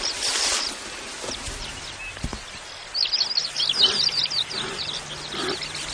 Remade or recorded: recorded